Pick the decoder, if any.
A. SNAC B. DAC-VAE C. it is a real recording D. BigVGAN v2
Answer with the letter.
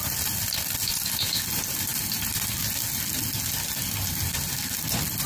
C